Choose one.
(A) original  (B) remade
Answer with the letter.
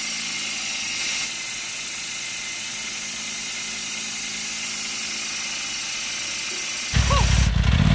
A